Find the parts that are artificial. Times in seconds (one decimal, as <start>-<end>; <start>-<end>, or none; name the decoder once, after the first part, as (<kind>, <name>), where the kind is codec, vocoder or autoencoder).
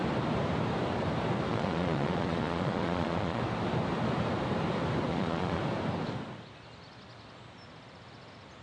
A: 1.5-3.4 (vocoder, Vocos); 5.1-5.6